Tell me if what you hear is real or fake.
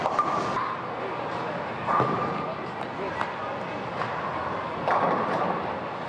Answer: real